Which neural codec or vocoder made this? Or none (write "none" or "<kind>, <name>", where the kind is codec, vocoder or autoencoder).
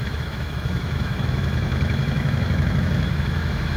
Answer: autoencoder, DAC-VAE